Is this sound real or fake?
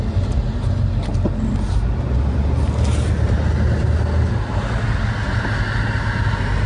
real